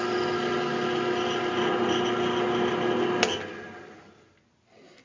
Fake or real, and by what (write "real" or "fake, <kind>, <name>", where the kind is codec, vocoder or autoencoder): real